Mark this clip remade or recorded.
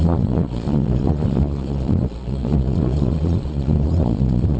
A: remade